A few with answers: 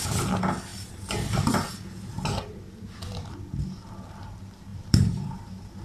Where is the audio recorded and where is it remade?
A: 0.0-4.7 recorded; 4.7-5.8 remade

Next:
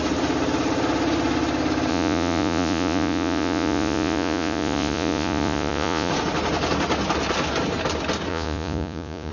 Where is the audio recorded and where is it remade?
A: 0.0-1.9 recorded; 1.9-6.1 remade; 6.1-8.3 recorded; 8.3-9.3 remade

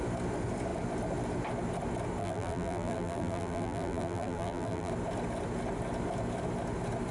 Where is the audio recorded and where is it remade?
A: 0.0-2.2 recorded; 2.2-4.9 remade; 4.9-7.1 recorded

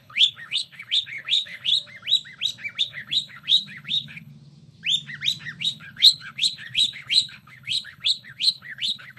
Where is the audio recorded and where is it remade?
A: 0.0-1.7 remade; 1.7-2.8 recorded; 2.8-4.3 remade; 4.3-5.6 recorded; 5.6-9.2 remade

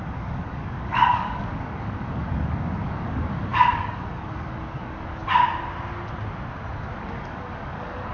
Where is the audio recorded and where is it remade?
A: 0.0-5.2 remade; 5.2-7.0 recorded; 7.0-8.1 remade

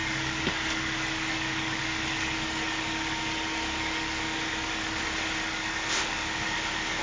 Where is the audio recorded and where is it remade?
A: 0.0-7.0 remade

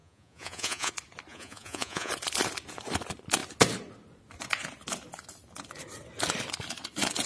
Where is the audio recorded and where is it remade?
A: 0.0-0.9 remade; 0.9-1.3 recorded; 1.3-2.1 remade; 2.1-7.3 recorded